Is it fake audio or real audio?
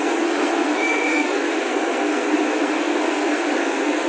fake